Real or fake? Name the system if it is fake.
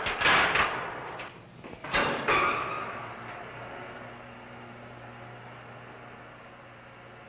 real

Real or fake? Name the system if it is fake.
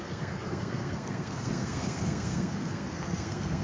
fake, codec, SNAC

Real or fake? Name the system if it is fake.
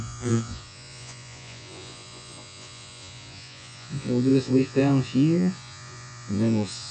fake, vocoder, Vocos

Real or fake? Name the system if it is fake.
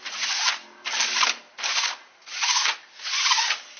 real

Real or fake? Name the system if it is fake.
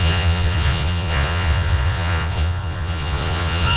fake, vocoder, Vocos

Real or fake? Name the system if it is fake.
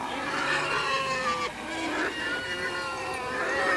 real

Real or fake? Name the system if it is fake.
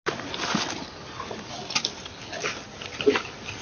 real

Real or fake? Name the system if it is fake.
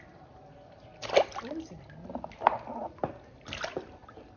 real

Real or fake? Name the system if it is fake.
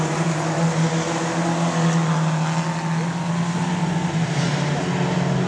real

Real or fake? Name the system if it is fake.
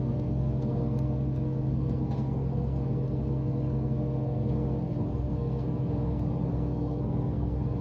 fake, codec, SNAC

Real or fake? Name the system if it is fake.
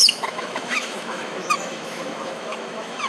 fake, autoencoder, DAC-VAE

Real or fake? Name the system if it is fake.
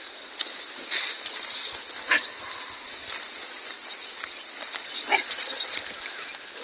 fake, vocoder, BigVGAN v2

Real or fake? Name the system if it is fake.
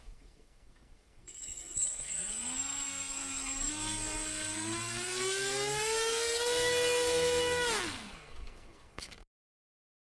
fake, codec, SNAC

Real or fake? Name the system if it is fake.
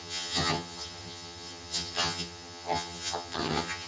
fake, vocoder, HiFi-GAN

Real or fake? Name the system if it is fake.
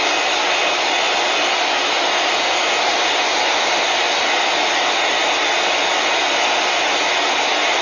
real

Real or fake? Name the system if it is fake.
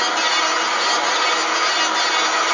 real